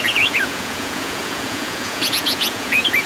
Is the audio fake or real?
fake